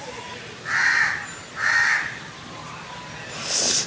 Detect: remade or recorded recorded